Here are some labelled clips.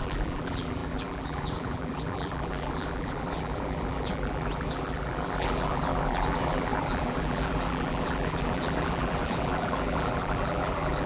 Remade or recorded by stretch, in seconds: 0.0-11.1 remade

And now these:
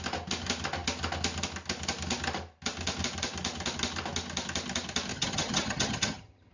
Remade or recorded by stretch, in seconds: 0.0-5.1 recorded; 5.1-6.5 remade

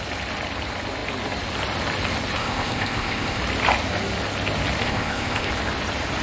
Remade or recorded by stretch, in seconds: 0.0-2.4 recorded; 2.4-3.4 remade; 3.4-4.8 recorded; 4.8-5.5 remade; 5.5-6.2 recorded

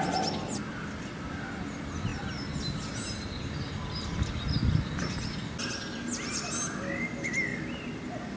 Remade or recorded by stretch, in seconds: 0.0-8.4 recorded

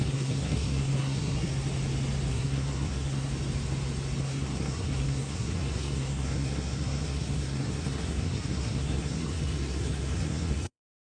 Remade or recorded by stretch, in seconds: 0.0-1.5 remade; 1.5-2.3 recorded; 2.3-3.3 remade; 3.3-4.2 recorded; 4.2-11.1 remade

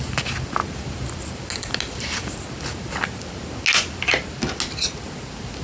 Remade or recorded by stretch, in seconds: 0.0-5.6 recorded